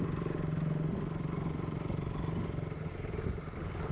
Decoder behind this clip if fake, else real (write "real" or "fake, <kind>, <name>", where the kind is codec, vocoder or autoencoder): real